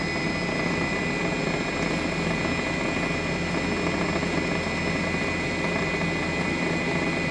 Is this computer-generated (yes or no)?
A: no